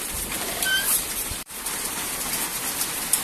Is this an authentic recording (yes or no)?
no